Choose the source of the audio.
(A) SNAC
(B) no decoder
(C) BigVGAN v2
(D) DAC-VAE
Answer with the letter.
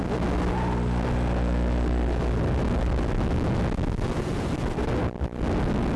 B